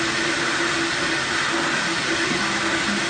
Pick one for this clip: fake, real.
real